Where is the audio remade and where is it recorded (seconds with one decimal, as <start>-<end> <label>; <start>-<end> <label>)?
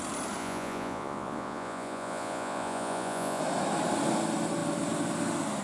0.0-0.4 recorded; 0.4-3.4 remade; 3.4-5.6 recorded